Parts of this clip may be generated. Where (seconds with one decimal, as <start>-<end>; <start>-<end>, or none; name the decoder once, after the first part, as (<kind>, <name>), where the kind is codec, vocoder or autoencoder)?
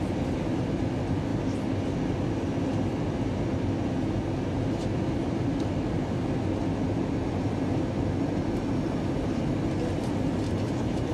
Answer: none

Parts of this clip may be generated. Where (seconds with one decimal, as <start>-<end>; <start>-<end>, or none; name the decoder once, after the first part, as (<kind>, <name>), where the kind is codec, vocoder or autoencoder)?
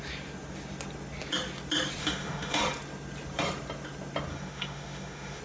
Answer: 2.0-2.6 (autoencoder, DAC-VAE); 4.3-5.4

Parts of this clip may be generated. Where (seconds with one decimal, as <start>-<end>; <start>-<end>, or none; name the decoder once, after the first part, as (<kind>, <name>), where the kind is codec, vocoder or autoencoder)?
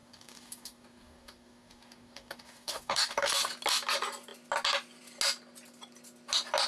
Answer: 0.0-3.3 (codec, DAC)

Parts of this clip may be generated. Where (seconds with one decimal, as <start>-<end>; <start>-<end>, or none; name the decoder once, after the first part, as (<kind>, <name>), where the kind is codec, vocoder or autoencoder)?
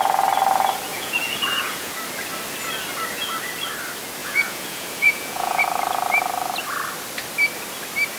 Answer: 0.9-1.9 (vocoder, Vocos); 4.2-5.6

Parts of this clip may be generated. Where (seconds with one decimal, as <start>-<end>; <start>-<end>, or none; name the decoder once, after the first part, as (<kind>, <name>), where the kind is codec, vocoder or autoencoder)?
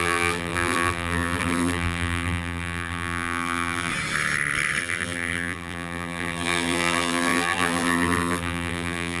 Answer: 0.0-3.9 (vocoder, BigVGAN v2); 4.8-9.2